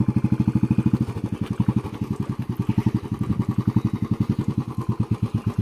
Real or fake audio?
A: real